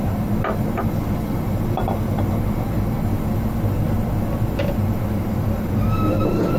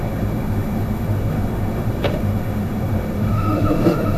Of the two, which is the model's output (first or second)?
second